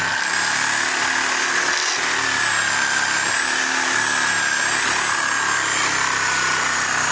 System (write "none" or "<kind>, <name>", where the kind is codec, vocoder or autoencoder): none